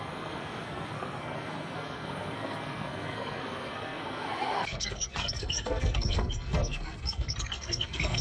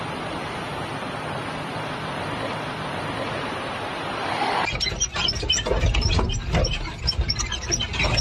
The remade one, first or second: first